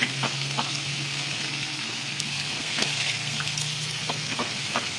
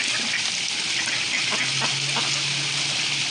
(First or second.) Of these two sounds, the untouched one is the second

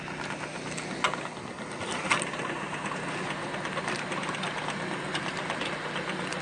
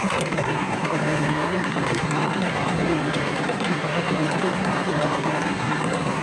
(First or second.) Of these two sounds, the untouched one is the first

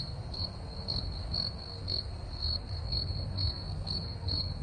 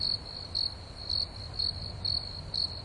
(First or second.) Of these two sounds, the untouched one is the second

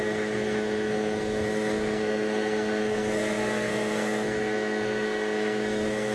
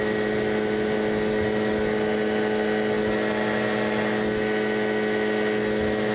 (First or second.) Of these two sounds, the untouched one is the second